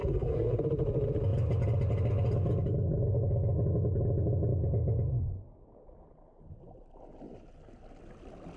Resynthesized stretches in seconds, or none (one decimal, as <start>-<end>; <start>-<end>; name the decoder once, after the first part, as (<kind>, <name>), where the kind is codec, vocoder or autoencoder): 0.0-0.6 (codec, SNAC)

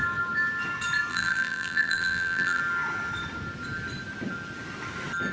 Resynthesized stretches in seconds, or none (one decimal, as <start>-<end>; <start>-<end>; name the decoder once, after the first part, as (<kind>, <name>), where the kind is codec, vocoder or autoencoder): 1.1-2.6 (vocoder, BigVGAN v2)